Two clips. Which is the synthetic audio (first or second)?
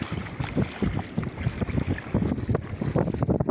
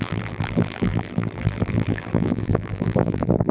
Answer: second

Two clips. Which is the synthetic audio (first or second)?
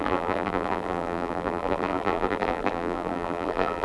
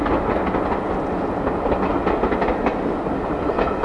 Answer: first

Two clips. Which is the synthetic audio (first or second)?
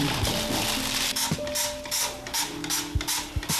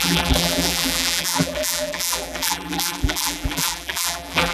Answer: second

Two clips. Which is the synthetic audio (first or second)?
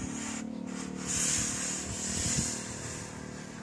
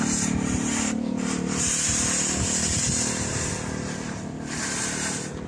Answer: second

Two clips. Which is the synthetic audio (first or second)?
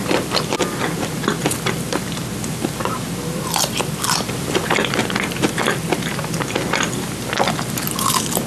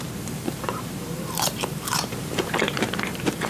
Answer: second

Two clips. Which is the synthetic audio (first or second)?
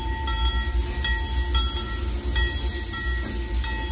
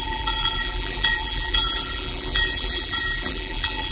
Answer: second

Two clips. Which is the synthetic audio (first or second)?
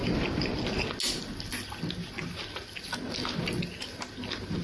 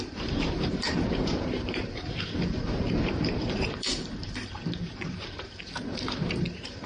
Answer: second